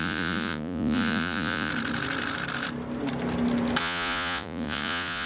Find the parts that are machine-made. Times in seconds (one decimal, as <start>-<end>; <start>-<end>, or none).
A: 0.0-1.7; 3.8-5.3